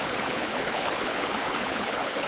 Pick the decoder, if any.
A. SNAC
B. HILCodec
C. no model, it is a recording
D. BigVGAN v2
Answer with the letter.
B